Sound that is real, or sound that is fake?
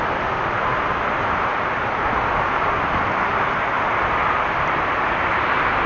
real